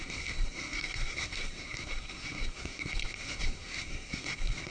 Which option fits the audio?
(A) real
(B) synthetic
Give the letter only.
B